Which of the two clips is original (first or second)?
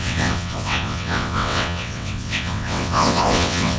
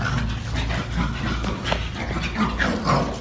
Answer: second